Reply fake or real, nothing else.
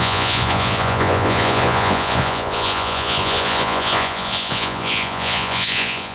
fake